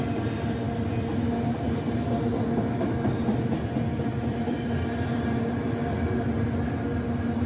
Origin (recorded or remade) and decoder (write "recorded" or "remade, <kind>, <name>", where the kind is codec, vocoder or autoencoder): recorded